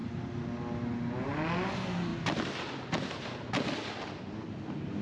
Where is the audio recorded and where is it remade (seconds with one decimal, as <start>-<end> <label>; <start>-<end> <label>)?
0.0-5.0 recorded